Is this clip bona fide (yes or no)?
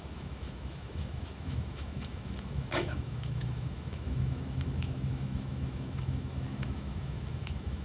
no